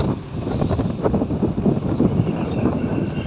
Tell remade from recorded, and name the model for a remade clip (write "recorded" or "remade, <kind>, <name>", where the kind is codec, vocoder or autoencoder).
recorded